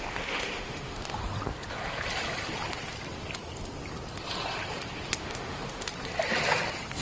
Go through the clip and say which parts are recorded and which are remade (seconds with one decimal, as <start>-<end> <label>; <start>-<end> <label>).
0.0-1.2 remade; 1.2-5.2 recorded; 5.2-5.9 remade; 5.9-7.0 recorded

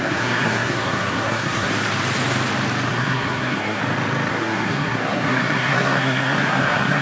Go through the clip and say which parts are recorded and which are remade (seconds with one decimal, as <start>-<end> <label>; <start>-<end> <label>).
0.0-1.7 remade; 1.7-2.9 recorded; 2.9-3.8 remade; 3.8-4.3 recorded; 4.3-7.0 remade

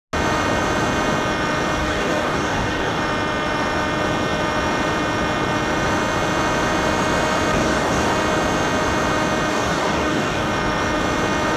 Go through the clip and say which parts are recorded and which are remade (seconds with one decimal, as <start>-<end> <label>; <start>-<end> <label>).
0.0-1.8 recorded; 1.8-3.0 remade; 3.0-7.5 recorded; 7.5-8.1 remade; 8.1-9.5 recorded; 9.5-10.5 remade; 10.5-11.6 recorded

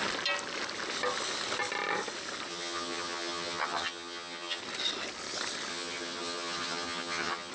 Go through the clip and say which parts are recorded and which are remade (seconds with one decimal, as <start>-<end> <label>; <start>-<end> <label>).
0.0-2.5 recorded; 2.5-4.6 remade; 4.6-5.7 recorded; 5.7-7.5 remade

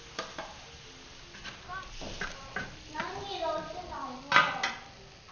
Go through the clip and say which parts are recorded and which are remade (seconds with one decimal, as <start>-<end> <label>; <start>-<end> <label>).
0.0-5.3 recorded

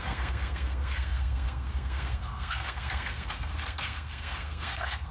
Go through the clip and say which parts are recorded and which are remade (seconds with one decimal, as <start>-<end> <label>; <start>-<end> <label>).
0.0-5.1 remade